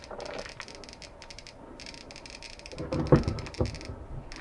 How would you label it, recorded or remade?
recorded